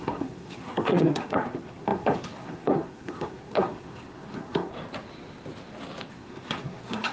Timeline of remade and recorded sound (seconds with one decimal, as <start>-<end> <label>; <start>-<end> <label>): 0.0-4.7 remade; 4.7-6.1 recorded; 6.1-7.1 remade